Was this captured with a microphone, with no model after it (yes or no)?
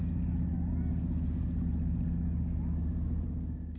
yes